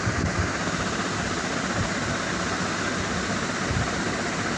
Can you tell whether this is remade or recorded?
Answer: recorded